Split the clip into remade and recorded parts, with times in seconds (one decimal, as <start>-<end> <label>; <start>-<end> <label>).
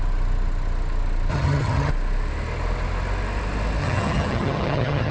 0.0-1.3 recorded; 1.3-1.9 remade; 1.9-3.8 recorded; 3.8-5.1 remade